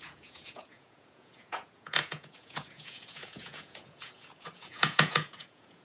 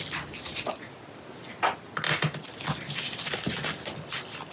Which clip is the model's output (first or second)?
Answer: first